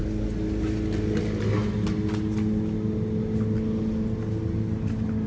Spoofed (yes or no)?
no